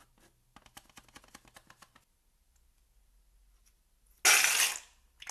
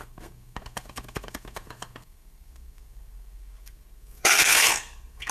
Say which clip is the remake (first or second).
second